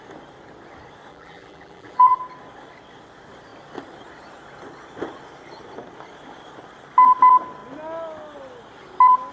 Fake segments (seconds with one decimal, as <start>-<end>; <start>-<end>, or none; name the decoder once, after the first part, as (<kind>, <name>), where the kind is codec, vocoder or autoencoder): 1.1-2.2 (vocoder, BigVGAN v2)